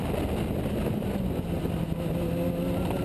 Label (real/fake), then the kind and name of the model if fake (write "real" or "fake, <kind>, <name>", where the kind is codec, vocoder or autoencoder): real